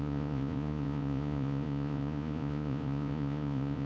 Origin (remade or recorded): remade